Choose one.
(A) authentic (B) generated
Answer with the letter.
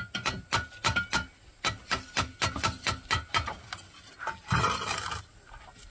A